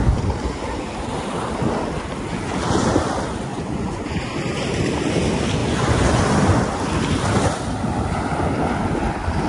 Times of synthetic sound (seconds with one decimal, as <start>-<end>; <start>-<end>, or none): 3.5-4.2; 5.6-6.2